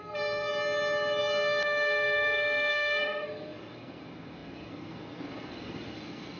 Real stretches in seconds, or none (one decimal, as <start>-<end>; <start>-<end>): 0.5-1.2